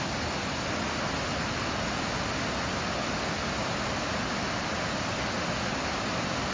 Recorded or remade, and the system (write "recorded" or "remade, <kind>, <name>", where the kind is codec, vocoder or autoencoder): recorded